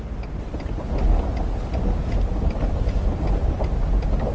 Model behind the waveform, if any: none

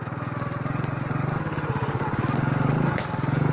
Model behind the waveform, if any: none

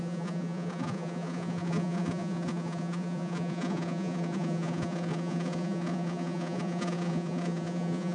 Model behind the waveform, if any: vocoder, Vocos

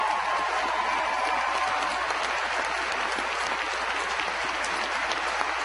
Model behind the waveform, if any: none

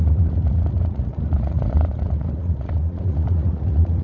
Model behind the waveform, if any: vocoder, Vocos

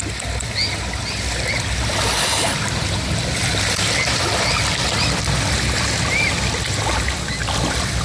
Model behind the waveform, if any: none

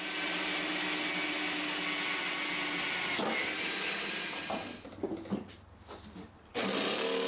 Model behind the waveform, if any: none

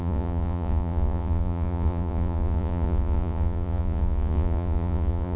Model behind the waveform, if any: vocoder, Vocos